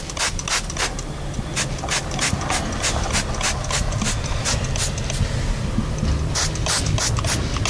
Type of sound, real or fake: real